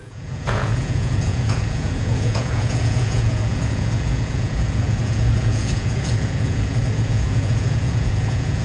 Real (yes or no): no